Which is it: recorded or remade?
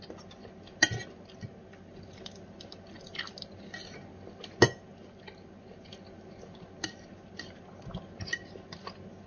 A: recorded